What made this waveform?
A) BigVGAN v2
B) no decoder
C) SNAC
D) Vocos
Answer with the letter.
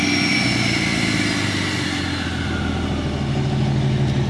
B